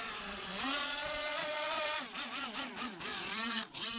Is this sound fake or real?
fake